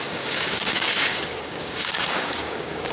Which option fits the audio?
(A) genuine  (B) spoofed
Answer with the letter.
B